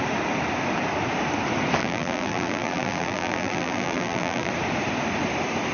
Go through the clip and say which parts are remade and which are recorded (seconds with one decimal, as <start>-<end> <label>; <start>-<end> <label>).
0.0-1.8 recorded; 1.8-4.5 remade; 4.5-5.7 recorded